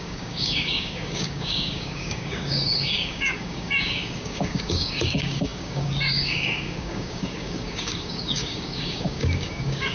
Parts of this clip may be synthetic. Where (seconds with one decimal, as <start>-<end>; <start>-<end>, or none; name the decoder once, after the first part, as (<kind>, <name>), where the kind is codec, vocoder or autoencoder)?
0.0-9.9 (codec, DAC)

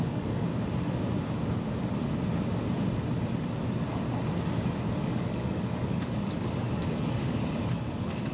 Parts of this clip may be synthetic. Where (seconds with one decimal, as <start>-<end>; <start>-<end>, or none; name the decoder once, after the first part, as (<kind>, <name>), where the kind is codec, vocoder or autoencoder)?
0.0-0.5 (codec, DAC); 5.0-8.3

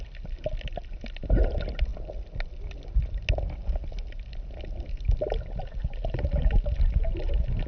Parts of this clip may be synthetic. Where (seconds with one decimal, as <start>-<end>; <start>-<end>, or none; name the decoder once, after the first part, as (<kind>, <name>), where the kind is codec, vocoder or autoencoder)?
none

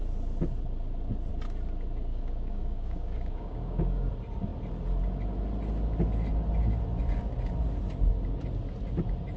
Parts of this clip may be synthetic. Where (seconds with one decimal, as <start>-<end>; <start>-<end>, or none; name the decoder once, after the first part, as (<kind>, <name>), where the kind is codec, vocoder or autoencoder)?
2.1-4.1 (codec, DAC)

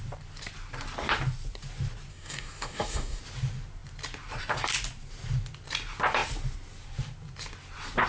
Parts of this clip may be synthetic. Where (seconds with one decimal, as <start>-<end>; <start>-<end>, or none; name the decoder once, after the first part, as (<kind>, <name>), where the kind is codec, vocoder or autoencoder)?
2.1-3.2 (codec, DAC)

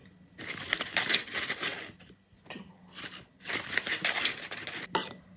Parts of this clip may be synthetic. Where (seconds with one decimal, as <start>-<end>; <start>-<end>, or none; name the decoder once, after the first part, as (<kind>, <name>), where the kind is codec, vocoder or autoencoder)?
none

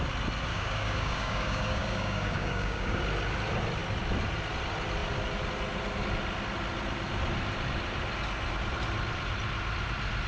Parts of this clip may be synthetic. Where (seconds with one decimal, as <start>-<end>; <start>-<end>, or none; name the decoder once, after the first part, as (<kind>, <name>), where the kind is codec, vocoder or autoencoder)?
0.5-3.0 (codec, DAC)

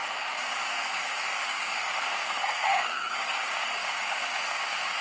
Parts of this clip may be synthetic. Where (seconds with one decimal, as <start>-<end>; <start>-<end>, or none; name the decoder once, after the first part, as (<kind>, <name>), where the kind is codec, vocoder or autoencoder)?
0.0-5.0 (codec, DAC)